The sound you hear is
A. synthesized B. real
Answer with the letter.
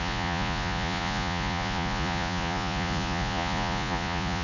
A